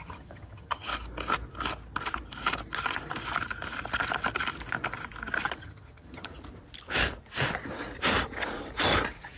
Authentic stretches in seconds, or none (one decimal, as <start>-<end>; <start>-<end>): 0.9-5.6; 6.3-9.4